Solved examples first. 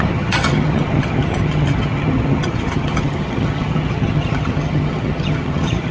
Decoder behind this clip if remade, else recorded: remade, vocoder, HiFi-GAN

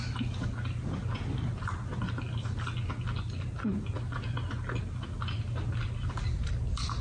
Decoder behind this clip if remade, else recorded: recorded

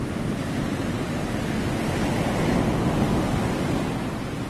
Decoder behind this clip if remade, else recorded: recorded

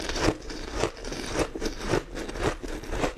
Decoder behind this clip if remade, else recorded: recorded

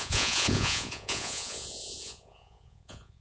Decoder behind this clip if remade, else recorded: remade, vocoder, Vocos